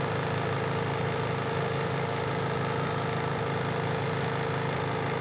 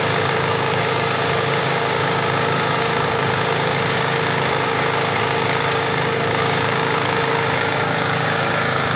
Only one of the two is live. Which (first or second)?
first